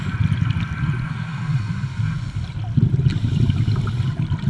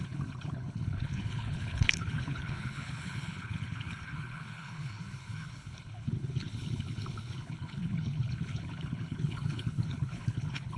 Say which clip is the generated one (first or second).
second